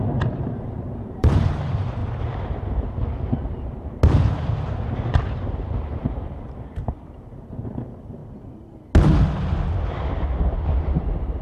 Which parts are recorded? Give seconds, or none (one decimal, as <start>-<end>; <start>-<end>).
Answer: 2.0-5.7; 8.2-10.8